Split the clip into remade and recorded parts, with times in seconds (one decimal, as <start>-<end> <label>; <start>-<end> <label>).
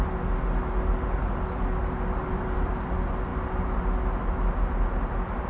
0.0-2.2 recorded; 2.2-2.7 remade; 2.7-3.3 recorded; 3.3-3.8 remade; 3.8-5.5 recorded